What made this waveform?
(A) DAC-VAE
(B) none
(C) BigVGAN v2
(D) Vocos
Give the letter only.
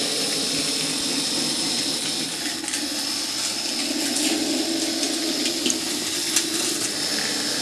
B